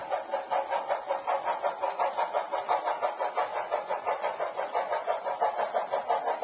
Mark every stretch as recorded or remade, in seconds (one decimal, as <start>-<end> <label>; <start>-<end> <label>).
0.0-3.5 recorded; 3.5-5.4 remade; 5.4-6.4 recorded